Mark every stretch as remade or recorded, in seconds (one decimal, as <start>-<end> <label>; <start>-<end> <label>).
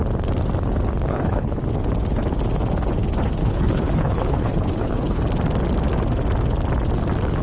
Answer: 0.0-1.1 recorded; 1.1-1.6 remade; 1.6-3.4 recorded; 3.4-5.2 remade; 5.2-7.4 recorded